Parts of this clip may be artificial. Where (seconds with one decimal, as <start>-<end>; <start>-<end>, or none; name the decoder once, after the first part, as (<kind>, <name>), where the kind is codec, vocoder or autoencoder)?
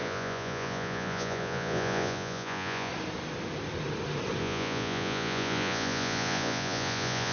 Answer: 0.0-2.9 (vocoder, Vocos); 4.4-7.3